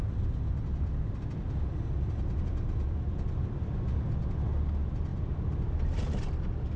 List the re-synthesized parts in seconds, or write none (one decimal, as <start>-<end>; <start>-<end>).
none